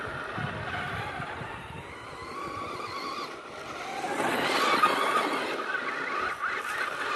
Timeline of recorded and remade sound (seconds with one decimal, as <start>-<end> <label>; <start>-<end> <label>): 0.0-7.2 recorded